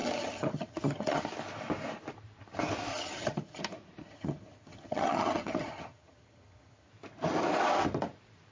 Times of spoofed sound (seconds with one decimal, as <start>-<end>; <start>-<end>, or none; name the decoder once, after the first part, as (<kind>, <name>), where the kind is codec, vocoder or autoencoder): 0.0-1.2 (vocoder, HiFi-GAN); 2.9-3.6; 4.0-6.9